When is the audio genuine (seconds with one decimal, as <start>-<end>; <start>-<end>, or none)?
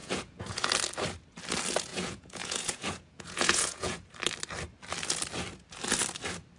0.7-1.9; 4.1-6.6